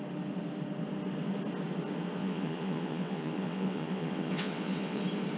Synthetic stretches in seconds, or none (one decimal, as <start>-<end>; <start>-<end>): 2.2-5.0